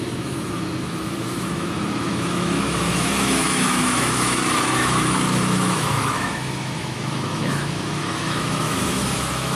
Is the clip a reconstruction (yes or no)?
yes